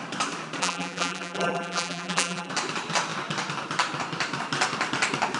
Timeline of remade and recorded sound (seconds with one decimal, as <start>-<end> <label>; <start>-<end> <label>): 0.0-0.6 recorded; 0.6-2.5 remade; 2.5-5.4 recorded

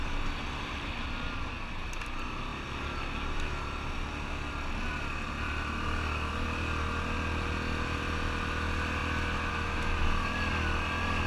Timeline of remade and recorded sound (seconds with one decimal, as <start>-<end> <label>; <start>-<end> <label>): 0.0-11.3 recorded

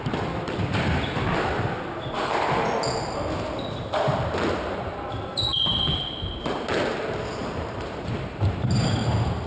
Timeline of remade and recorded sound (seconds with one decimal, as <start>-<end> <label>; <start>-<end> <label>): 0.0-5.3 recorded; 5.3-6.0 remade; 6.0-7.4 recorded; 7.4-9.1 remade; 9.1-9.5 recorded

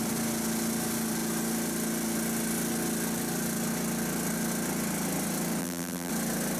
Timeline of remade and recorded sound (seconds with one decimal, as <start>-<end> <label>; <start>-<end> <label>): 0.0-5.6 recorded; 5.6-6.1 remade; 6.1-6.6 recorded

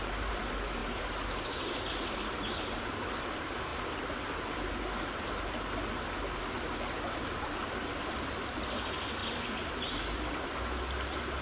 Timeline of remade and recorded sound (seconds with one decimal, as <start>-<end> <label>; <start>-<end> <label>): 0.0-3.7 remade; 3.7-8.1 recorded; 8.1-9.2 remade; 9.2-11.4 recorded